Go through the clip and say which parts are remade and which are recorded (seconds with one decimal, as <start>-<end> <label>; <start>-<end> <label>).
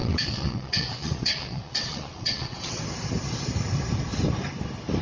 0.0-2.8 remade; 2.8-5.0 recorded